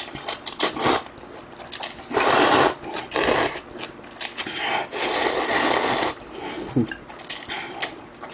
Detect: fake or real real